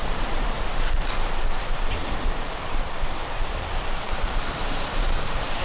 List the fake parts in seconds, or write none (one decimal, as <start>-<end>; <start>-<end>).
0.0-1.4; 2.0-5.6